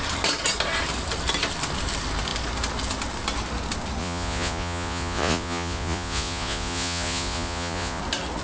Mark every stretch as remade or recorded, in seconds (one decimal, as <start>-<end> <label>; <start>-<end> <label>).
0.0-4.0 recorded; 4.0-8.0 remade; 8.0-8.4 recorded